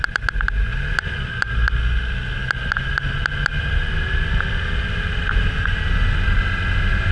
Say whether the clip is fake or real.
real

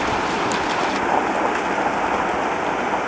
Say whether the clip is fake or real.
real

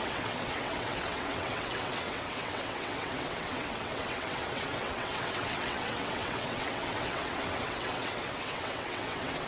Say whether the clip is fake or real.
fake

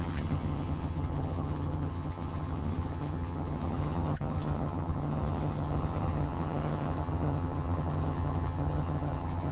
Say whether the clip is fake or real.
fake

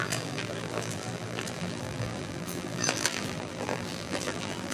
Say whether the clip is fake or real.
fake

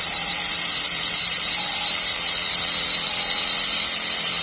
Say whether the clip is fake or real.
fake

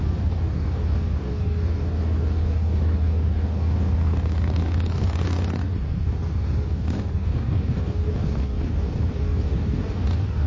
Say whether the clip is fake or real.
fake